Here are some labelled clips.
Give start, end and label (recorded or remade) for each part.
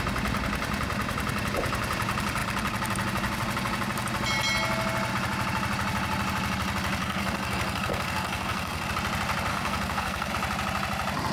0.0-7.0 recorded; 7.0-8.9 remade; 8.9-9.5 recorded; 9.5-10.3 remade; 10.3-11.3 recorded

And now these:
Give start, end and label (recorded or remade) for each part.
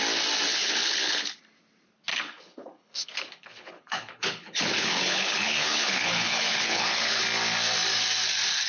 0.0-0.5 recorded; 0.5-1.4 remade; 1.4-2.1 recorded; 2.1-7.2 remade; 7.2-8.7 recorded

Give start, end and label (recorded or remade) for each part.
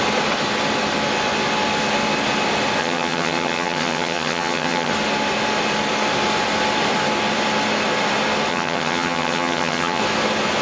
0.0-2.8 recorded; 2.8-4.9 remade; 4.9-8.5 recorded; 8.5-10.0 remade; 10.0-10.6 recorded